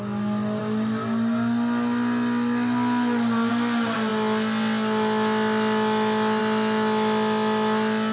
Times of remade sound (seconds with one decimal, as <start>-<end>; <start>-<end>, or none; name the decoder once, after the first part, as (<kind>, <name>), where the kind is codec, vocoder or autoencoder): none